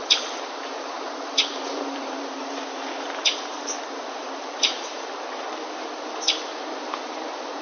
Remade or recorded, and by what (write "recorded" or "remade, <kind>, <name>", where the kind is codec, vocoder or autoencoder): remade, vocoder, BigVGAN v2